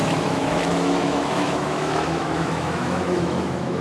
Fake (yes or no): yes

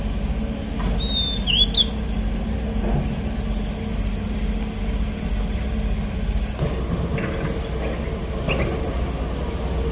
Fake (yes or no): no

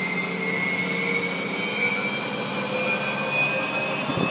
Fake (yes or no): no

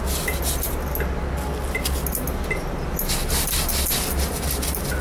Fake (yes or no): no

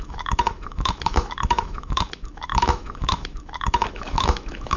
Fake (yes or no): yes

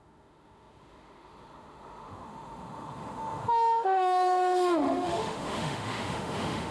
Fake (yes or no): yes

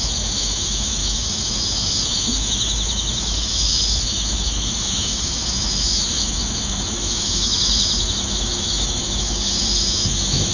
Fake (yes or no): yes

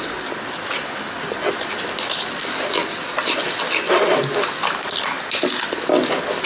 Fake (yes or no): no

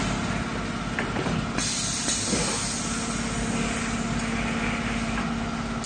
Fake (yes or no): no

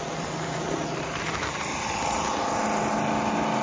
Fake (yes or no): no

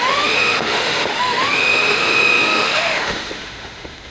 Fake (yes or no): yes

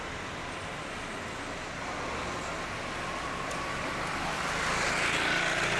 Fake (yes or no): no